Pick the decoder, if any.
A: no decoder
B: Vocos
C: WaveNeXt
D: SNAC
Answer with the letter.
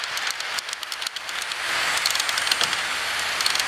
A